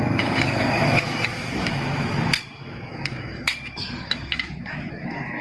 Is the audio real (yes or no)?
no